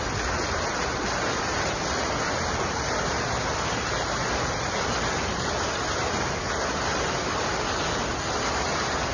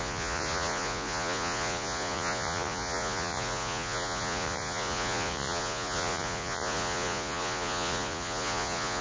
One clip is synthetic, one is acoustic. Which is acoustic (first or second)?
first